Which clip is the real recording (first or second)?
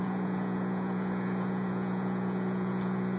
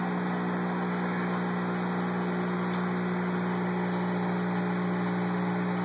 second